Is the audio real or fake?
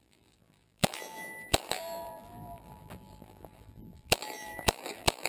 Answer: fake